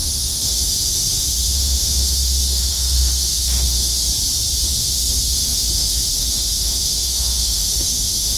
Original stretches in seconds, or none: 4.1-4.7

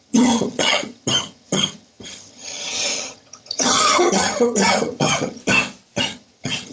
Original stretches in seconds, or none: 5.4-6.0

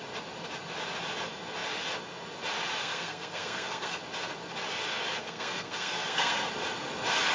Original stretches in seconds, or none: 0.0-2.8; 4.0-5.2; 6.5-7.3

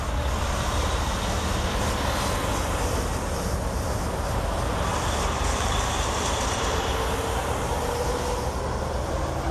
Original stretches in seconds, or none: 0.0-4.9; 6.9-9.5

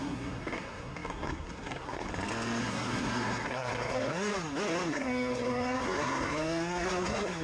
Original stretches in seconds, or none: 2.1-2.6; 4.3-4.9

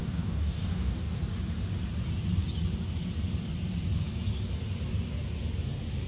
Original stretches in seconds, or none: 1.2-6.1